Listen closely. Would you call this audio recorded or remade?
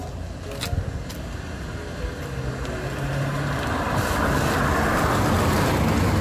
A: recorded